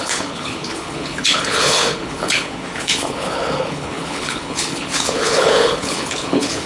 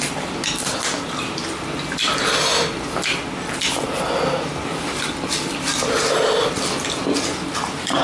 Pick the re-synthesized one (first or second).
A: first